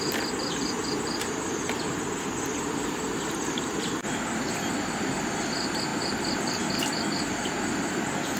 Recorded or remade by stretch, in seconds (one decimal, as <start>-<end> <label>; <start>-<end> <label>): 0.0-8.4 recorded